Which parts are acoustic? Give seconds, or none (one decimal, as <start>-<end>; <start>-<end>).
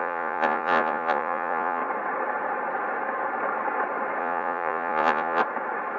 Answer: 1.8-4.2; 5.4-6.0